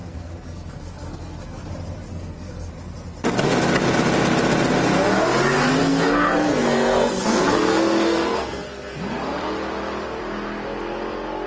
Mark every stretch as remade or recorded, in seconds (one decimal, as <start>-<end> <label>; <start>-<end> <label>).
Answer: 0.0-1.7 remade; 1.7-2.1 recorded; 2.1-2.7 remade; 2.7-5.8 recorded; 5.8-9.1 remade; 9.1-11.5 recorded